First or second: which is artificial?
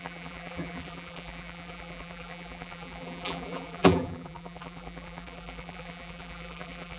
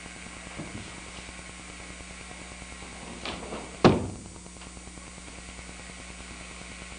first